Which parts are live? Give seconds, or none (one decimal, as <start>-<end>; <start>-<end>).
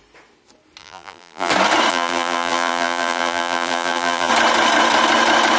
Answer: 0.0-0.8; 1.5-1.9; 4.3-5.6